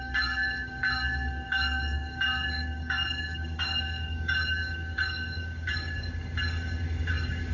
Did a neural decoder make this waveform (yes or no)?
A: yes